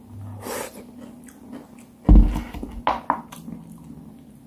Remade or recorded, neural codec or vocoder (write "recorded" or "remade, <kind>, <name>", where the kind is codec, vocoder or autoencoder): recorded